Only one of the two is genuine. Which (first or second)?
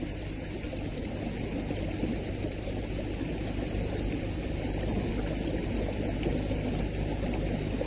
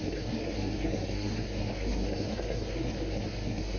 first